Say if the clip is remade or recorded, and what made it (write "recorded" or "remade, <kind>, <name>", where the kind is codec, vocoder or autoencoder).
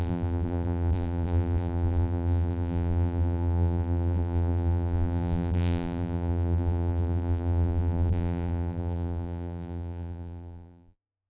remade, vocoder, BigVGAN v2